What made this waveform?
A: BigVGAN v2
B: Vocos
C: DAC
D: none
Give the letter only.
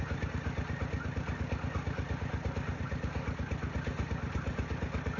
D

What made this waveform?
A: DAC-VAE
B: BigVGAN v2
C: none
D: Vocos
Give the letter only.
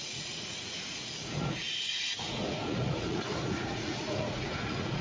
D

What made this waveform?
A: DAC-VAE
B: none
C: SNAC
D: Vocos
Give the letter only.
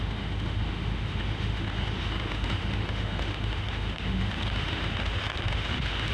A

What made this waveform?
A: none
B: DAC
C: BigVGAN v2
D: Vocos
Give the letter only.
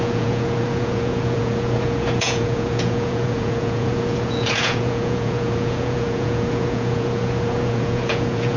D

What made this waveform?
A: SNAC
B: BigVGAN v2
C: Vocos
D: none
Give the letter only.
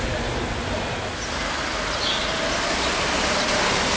D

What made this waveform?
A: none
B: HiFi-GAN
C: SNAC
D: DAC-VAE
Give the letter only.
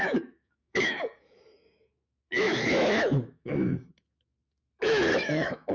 D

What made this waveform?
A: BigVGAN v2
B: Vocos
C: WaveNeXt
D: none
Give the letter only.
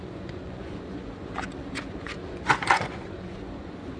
B